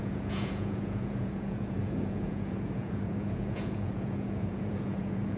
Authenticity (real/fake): fake